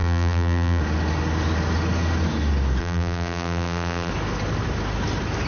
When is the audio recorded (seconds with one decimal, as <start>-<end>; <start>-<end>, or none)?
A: 0.8-2.8; 4.1-5.5